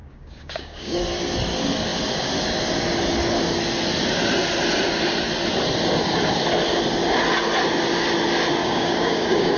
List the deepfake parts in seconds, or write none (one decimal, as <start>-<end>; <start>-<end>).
0.0-1.0; 8.6-9.6